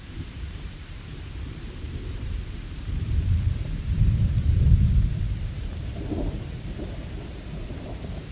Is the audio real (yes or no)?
no